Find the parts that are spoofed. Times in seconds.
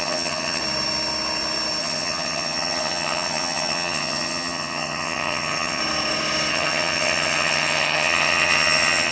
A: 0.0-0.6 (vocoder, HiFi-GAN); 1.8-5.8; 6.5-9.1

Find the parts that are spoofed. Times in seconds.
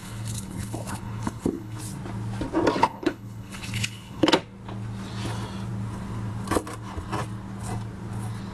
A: 0.0-1.8 (codec, HILCodec); 2.8-4.3